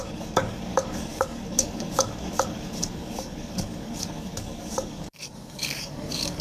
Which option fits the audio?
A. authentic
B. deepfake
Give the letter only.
B